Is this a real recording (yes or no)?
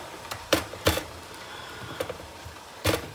no